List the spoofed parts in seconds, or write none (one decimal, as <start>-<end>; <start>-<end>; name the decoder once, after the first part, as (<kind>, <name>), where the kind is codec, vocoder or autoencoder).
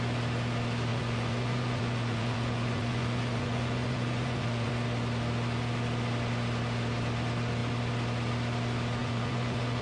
0.9-4.7 (vocoder, Vocos); 9.0-9.8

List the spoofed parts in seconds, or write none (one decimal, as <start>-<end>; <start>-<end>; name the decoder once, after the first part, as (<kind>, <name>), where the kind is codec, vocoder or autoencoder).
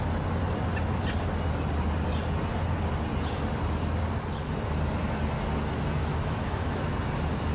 6.0-6.9 (autoencoder, DAC-VAE)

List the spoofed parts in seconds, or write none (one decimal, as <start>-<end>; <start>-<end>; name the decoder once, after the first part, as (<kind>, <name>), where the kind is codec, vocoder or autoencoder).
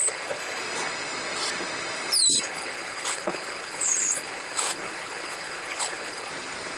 0.0-0.6 (codec, HILCodec); 2.3-6.3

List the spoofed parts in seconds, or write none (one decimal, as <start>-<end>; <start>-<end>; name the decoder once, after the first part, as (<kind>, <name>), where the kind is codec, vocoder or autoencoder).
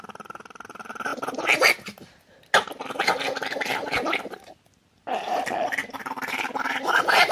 5.8-7.3 (vocoder, BigVGAN v2)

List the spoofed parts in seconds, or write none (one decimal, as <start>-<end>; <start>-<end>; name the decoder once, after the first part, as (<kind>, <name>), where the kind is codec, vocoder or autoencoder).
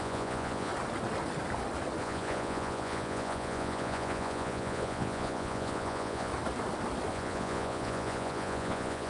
0.0-0.7 (vocoder, Vocos); 2.0-6.3; 7.1-9.1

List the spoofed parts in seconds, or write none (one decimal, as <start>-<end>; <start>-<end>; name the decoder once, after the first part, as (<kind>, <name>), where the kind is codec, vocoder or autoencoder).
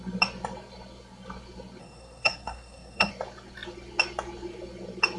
1.8-3.1 (codec, SNAC)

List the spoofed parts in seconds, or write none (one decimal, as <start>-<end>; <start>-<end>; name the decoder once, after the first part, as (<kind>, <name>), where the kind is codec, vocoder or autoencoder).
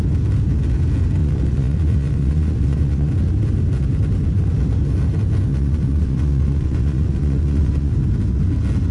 1.2-3.1 (vocoder, Vocos); 5.5-7.9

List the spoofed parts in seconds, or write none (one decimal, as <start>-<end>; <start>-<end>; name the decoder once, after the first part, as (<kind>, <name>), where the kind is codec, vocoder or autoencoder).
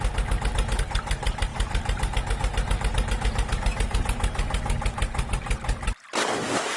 6.2-6.8 (codec, DAC)